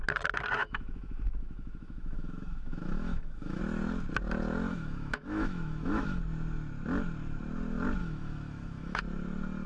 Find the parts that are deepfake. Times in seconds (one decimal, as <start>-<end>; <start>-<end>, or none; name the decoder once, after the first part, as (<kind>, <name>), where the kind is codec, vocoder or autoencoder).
0.6-3.6 (autoencoder, DAC-VAE); 4.7-6.2; 8.0-9.0